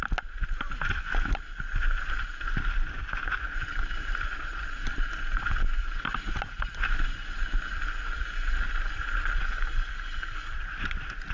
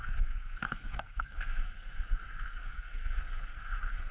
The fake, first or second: second